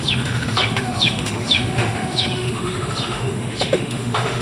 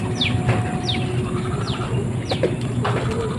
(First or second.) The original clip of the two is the second